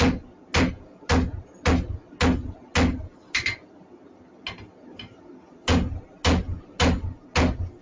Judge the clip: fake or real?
real